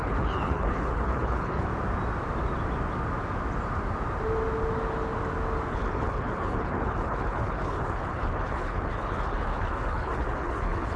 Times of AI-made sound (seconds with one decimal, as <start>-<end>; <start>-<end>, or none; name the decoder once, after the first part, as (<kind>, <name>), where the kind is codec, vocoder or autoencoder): 0.0-1.7 (codec, HILCodec); 5.7-11.0